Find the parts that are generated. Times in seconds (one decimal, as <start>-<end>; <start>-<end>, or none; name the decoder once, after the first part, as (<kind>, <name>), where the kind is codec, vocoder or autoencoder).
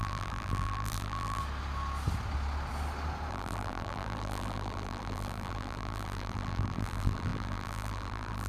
0.0-1.4 (vocoder, BigVGAN v2); 3.3-8.5